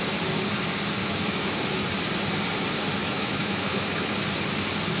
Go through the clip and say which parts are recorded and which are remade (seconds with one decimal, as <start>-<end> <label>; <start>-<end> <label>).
0.0-1.0 recorded; 1.0-1.6 remade; 1.6-3.0 recorded; 3.0-4.1 remade; 4.1-5.0 recorded